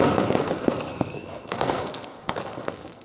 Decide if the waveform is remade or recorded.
remade